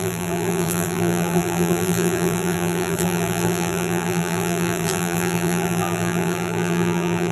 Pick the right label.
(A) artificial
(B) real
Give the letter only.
A